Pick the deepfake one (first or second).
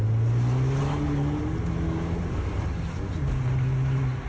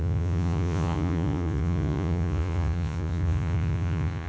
second